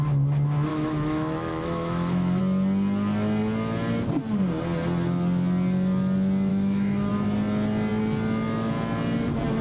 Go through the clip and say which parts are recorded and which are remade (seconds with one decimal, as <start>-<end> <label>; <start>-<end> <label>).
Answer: 0.0-0.7 recorded; 0.7-2.4 remade; 2.4-6.5 recorded; 6.5-7.1 remade; 7.1-9.6 recorded